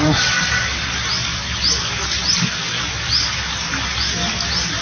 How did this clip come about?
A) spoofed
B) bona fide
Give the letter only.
B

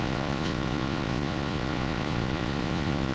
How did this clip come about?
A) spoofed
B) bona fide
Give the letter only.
A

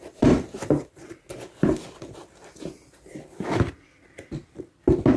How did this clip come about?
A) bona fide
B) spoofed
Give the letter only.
A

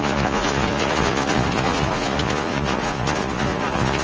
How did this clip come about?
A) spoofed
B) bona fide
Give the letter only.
A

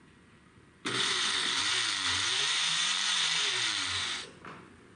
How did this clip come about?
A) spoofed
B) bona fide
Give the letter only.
A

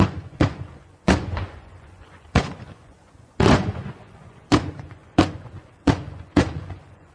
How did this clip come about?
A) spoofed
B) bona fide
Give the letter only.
A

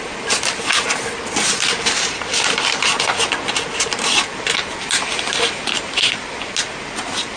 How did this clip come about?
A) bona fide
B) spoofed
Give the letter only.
A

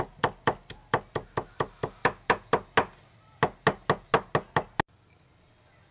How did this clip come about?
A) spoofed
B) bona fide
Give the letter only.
B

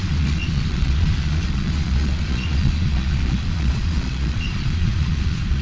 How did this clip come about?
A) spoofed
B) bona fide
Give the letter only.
A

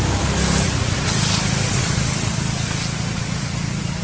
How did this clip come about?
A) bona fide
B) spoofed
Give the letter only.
A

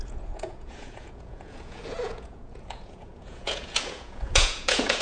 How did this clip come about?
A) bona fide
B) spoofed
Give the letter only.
B